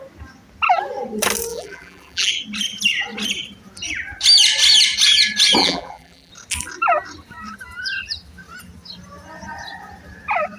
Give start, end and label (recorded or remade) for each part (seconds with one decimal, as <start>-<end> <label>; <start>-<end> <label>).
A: 0.0-1.5 recorded; 1.5-2.3 remade; 2.3-5.6 recorded; 5.6-6.3 remade; 6.3-10.6 recorded